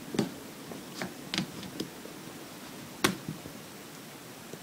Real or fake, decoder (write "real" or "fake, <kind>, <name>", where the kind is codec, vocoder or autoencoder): real